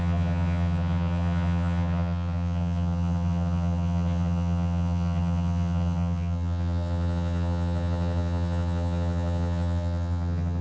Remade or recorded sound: remade